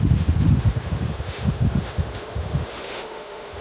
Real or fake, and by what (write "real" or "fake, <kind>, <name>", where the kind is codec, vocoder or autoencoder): fake, autoencoder, DAC-VAE